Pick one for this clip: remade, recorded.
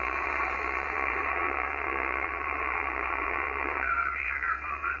remade